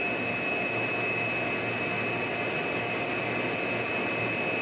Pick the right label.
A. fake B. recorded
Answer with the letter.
B